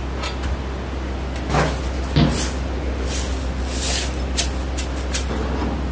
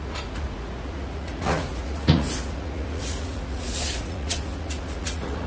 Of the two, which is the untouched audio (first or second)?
first